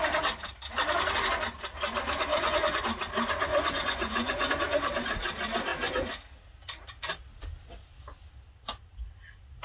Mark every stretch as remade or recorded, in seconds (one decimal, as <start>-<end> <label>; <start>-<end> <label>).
0.0-2.3 recorded; 2.3-2.8 remade; 2.8-3.5 recorded; 3.5-4.5 remade; 4.5-9.6 recorded